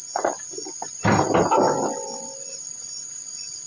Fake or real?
real